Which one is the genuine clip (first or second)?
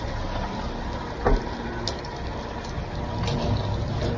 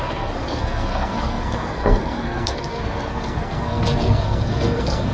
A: first